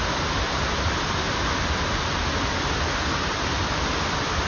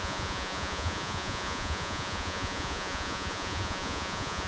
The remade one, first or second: second